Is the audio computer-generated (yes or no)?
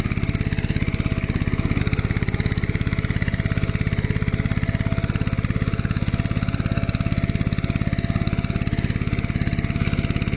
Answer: no